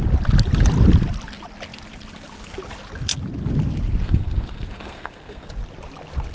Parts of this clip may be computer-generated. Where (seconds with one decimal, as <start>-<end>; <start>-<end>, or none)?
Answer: 4.0-5.5